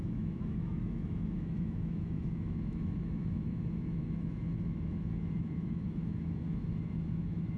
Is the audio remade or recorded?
remade